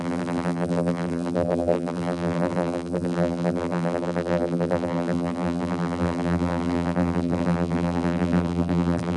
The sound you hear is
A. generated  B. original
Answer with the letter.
A